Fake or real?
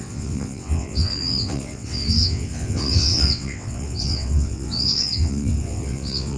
fake